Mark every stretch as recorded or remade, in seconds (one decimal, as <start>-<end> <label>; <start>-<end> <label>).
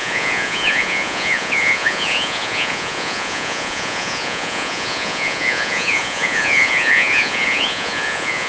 0.0-8.5 remade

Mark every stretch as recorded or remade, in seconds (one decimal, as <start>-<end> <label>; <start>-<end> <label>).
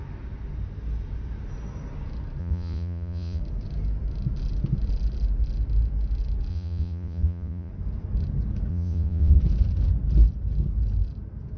0.0-2.4 recorded; 2.4-3.4 remade; 3.4-6.5 recorded; 6.5-7.7 remade; 7.7-8.7 recorded; 8.7-9.4 remade; 9.4-11.6 recorded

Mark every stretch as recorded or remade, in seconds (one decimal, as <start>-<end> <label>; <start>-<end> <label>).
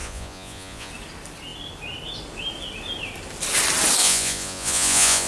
0.0-0.9 remade; 0.9-4.0 recorded; 4.0-5.3 remade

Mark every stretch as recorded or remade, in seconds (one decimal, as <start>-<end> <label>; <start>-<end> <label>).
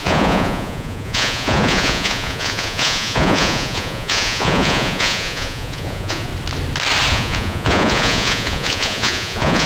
0.0-6.3 remade; 6.3-7.1 recorded; 7.1-9.7 remade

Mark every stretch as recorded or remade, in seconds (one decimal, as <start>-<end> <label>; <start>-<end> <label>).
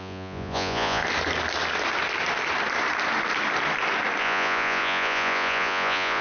0.0-1.0 remade; 1.0-4.2 recorded; 4.2-6.2 remade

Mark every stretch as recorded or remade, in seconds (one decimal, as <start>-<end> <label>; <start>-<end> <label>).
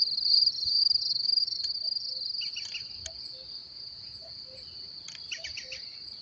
0.0-3.6 recorded; 3.6-4.3 remade; 4.3-6.2 recorded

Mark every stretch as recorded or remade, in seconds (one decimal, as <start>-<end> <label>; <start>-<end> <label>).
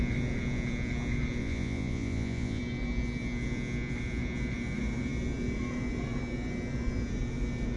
0.0-1.4 recorded; 1.4-2.6 remade; 2.6-7.8 recorded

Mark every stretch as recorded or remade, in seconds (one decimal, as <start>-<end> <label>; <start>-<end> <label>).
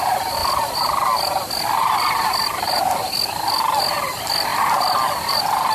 0.0-5.7 recorded